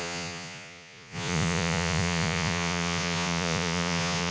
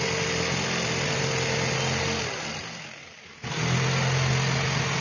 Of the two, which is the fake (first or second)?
first